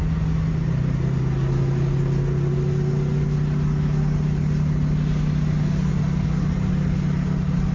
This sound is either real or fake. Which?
real